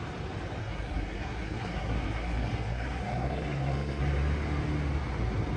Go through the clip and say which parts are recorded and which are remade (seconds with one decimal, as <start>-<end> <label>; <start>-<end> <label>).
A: 0.0-0.6 recorded; 0.6-4.0 remade; 4.0-5.6 recorded